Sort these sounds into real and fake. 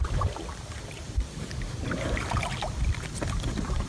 fake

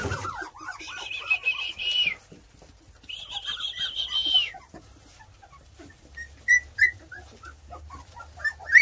real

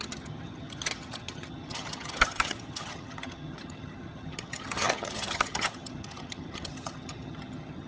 fake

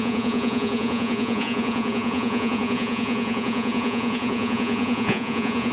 fake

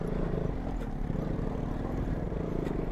fake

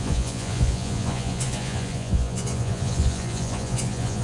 fake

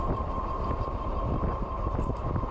real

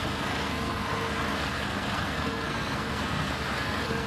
fake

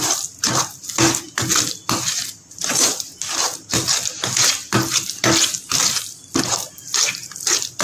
real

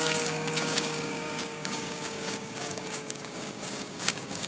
fake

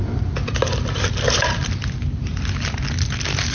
real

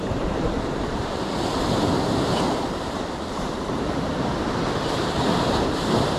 fake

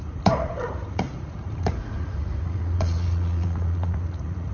fake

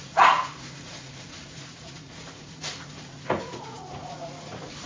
fake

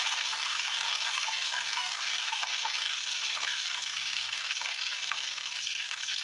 fake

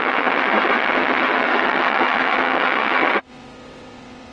fake